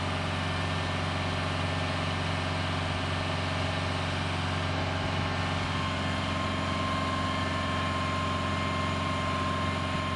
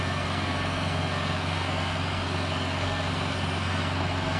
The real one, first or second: first